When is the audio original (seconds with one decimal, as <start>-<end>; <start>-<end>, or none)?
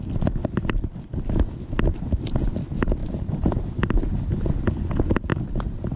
0.0-3.0; 3.9-6.0